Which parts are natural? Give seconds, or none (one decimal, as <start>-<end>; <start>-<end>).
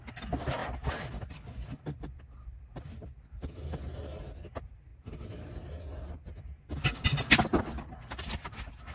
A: 0.0-8.9